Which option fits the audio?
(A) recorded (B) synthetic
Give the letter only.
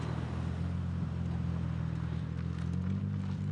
A